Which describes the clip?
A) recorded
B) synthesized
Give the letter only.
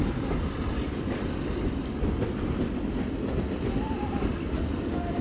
A